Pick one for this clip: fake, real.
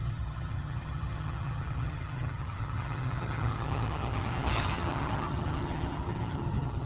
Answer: fake